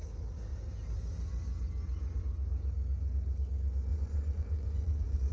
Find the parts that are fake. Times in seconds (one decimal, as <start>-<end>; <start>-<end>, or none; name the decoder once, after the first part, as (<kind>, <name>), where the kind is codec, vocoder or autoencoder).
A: 3.9-5.3 (vocoder, Vocos)